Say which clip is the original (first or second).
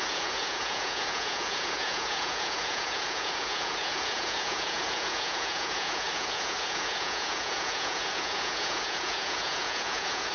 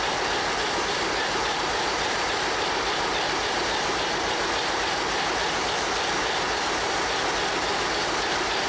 second